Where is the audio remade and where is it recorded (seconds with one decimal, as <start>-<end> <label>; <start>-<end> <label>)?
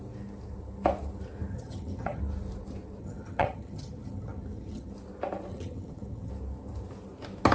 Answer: 0.0-1.5 recorded; 1.5-2.2 remade; 2.2-3.0 recorded; 3.0-4.9 remade; 4.9-5.5 recorded; 5.5-6.3 remade; 6.3-7.5 recorded